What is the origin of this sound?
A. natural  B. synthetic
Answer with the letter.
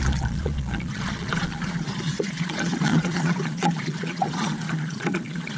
B